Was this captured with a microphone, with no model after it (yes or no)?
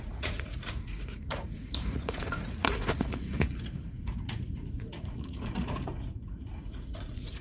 no